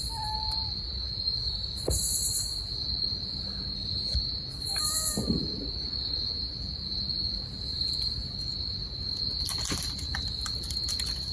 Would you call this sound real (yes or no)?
yes